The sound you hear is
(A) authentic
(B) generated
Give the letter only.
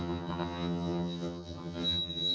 B